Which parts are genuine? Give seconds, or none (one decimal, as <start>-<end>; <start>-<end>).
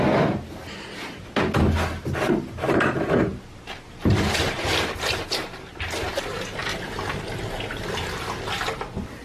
0.0-9.2